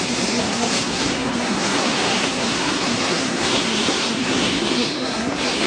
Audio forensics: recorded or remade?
remade